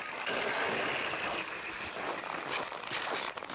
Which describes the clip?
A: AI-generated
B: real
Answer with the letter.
B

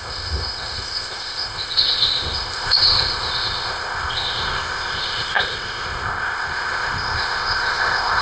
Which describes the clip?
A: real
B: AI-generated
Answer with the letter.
B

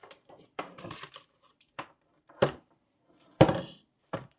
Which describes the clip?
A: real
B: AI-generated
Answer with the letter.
B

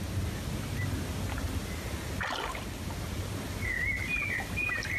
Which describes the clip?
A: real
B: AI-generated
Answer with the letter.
A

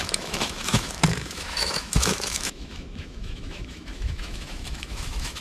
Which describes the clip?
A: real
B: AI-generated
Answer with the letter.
B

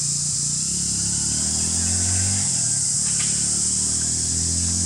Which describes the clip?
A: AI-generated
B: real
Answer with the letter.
B